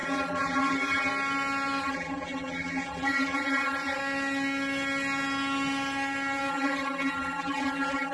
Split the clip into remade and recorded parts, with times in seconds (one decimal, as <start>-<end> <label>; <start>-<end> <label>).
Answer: 0.0-1.1 remade; 1.1-1.8 recorded; 1.8-4.0 remade; 4.0-6.5 recorded; 6.5-8.1 remade